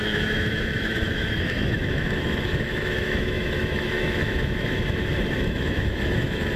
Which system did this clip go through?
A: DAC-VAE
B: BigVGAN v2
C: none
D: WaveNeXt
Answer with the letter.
A